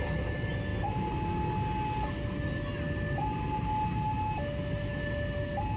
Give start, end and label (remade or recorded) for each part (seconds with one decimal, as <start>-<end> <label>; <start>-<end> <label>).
0.0-5.8 recorded